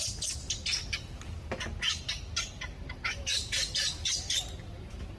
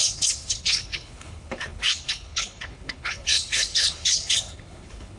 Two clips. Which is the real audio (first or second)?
first